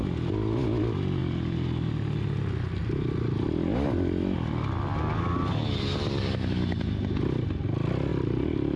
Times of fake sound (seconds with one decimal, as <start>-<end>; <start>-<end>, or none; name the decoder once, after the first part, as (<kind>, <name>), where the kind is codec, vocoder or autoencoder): 8.1-8.8 (vocoder, BigVGAN v2)